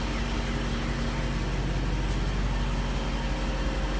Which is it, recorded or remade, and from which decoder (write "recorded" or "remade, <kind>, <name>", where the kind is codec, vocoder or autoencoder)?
recorded